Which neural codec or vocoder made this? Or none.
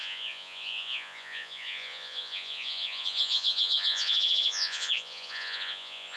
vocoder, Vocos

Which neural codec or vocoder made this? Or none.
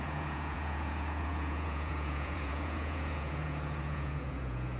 vocoder, Vocos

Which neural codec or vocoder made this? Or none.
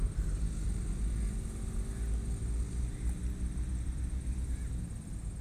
none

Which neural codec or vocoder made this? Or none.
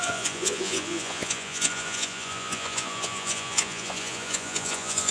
vocoder, Vocos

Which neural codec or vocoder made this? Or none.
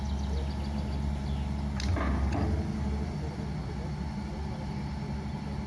none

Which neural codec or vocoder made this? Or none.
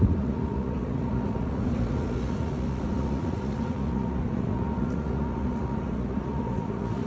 vocoder, Vocos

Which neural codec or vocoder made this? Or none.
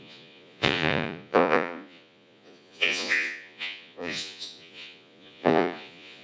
vocoder, Vocos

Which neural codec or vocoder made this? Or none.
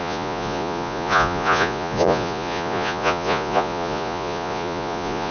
vocoder, Vocos